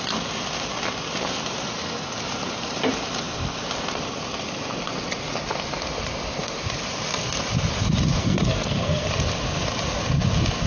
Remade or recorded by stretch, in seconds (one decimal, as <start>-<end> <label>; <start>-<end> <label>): 0.0-8.2 recorded; 8.2-9.1 remade; 9.1-10.7 recorded